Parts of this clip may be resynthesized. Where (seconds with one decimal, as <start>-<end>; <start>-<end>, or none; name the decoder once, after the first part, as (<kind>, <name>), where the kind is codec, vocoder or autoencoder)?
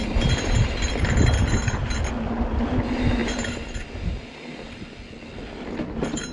none